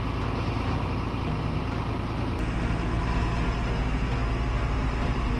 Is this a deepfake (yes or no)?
no